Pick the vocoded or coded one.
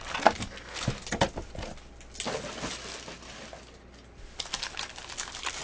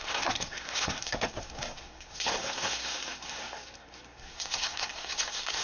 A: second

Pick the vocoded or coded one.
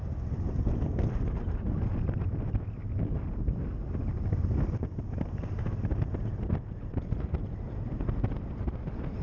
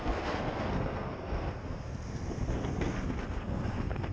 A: second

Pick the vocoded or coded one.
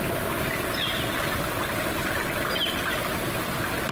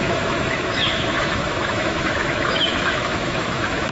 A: second